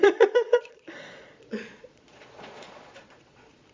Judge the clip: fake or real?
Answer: fake